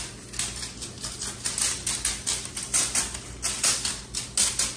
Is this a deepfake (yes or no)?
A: no